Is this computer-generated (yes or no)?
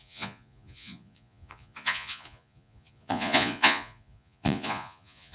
yes